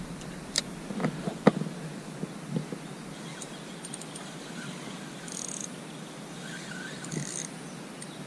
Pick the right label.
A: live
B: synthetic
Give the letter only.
A